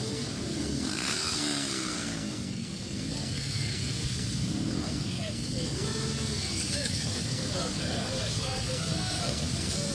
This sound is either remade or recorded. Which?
remade